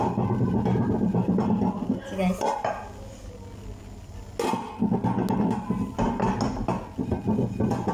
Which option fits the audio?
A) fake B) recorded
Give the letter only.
B